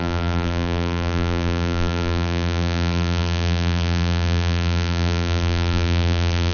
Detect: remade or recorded remade